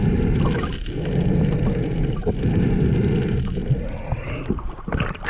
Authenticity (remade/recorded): recorded